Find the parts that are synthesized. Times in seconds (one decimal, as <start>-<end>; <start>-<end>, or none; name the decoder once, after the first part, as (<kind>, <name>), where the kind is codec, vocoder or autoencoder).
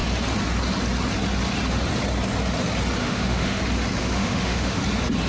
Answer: 3.0-3.6 (autoencoder, DAC-VAE); 4.0-4.8